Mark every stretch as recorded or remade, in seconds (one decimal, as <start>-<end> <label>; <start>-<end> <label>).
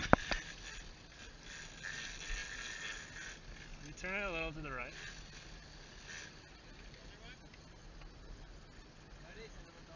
0.0-10.0 recorded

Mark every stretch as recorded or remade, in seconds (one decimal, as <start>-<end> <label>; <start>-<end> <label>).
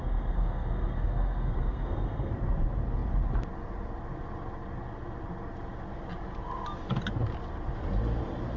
0.0-2.3 remade; 2.3-8.6 recorded